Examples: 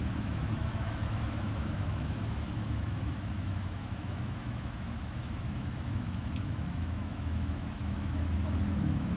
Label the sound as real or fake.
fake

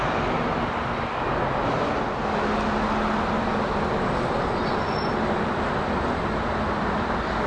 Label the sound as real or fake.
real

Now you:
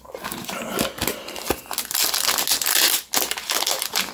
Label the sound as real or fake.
real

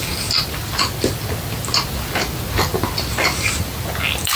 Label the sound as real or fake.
real